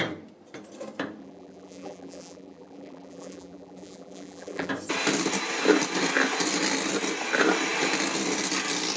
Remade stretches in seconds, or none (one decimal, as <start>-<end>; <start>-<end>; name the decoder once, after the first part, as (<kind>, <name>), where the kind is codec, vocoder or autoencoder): 1.2-4.7 (vocoder, BigVGAN v2)